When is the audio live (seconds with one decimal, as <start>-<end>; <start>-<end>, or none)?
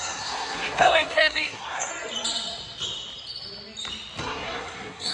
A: 1.9-4.2